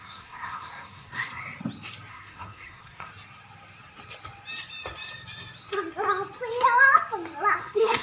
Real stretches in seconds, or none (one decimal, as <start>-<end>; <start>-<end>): 1.4-2.1; 3.1-7.6